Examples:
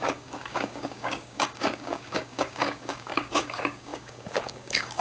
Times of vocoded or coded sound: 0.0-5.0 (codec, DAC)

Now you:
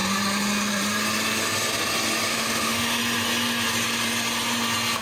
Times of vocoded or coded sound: 2.3-3.0 (autoencoder, DAC-VAE)